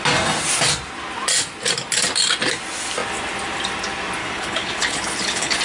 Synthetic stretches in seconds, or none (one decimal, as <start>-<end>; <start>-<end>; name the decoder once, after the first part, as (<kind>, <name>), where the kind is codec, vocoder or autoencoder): 4.2-5.6 (codec, HILCodec)